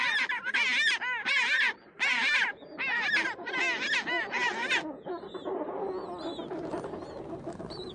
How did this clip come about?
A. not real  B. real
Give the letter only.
B